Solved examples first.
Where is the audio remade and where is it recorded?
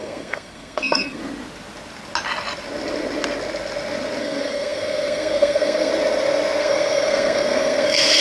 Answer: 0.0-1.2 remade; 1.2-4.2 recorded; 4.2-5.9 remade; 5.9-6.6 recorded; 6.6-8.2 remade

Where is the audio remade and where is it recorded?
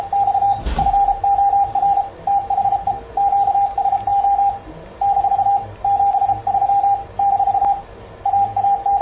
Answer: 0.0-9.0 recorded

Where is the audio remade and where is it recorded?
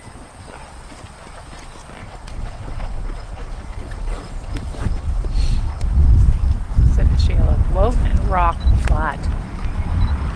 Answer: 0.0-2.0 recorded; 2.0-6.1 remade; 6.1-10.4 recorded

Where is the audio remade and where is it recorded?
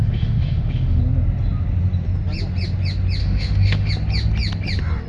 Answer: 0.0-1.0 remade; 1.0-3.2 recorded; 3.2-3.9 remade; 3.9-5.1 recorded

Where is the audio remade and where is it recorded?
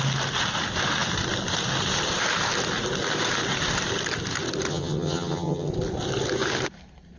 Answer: 0.0-4.7 recorded; 4.7-5.7 remade; 5.7-7.2 recorded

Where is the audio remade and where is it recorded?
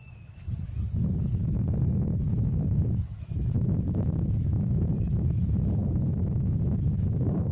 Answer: 0.0-1.4 remade; 1.4-3.0 recorded; 3.0-7.5 remade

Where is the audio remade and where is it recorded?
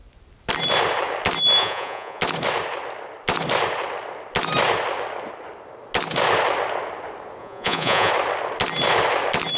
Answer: 0.0-1.6 recorded; 1.6-2.2 remade; 2.2-7.4 recorded; 7.4-8.1 remade; 8.1-9.6 recorded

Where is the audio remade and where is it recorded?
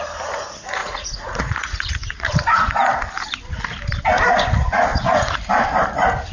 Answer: 0.0-0.8 recorded; 0.8-2.3 remade; 2.3-4.9 recorded; 4.9-5.5 remade; 5.5-6.3 recorded